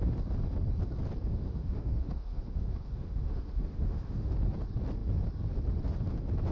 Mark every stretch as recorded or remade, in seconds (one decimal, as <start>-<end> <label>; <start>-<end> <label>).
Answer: 0.0-1.3 recorded; 1.3-4.3 remade; 4.3-6.5 recorded